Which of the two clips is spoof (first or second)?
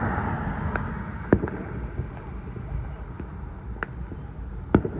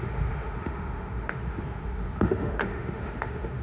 second